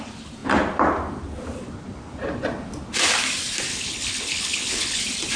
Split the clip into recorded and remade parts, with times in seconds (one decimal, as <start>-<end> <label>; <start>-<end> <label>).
0.0-3.7 recorded; 3.7-5.0 remade; 5.0-5.4 recorded

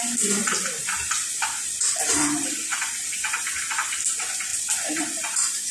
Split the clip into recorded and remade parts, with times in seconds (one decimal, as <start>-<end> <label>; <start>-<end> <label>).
0.0-5.7 recorded

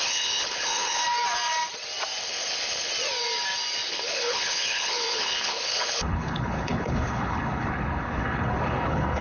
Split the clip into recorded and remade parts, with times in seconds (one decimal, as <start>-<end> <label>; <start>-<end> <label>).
0.0-1.0 remade; 1.0-2.2 recorded; 2.2-2.9 remade; 2.9-3.9 recorded; 3.9-9.2 remade

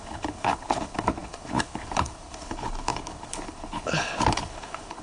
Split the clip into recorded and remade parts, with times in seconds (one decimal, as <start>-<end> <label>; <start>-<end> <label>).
0.0-5.0 remade